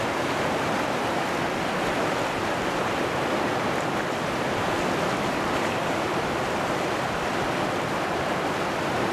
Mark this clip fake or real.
real